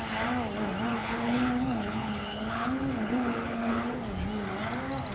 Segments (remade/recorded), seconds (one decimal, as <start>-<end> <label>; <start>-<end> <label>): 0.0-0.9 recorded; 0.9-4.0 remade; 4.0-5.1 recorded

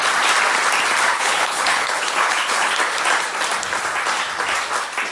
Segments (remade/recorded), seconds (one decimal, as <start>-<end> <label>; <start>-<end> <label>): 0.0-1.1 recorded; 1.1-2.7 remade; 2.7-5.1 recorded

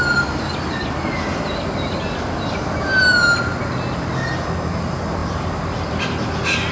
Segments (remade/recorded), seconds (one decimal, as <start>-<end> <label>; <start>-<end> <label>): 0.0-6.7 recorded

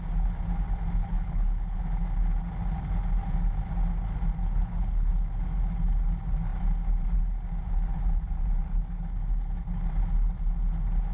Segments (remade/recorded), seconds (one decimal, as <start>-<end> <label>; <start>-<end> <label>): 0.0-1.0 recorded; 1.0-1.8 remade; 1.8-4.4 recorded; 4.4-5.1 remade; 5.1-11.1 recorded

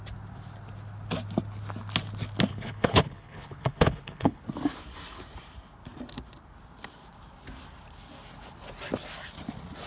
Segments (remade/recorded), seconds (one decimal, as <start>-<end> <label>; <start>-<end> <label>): 0.0-2.5 recorded; 2.5-4.4 remade; 4.4-9.9 recorded

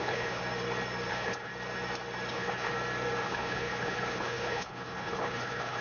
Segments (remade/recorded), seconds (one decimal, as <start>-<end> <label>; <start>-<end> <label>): 0.0-0.4 remade; 0.4-1.1 recorded; 1.1-1.5 remade; 1.5-2.3 recorded; 2.3-2.7 remade; 2.7-3.2 recorded; 3.2-5.8 remade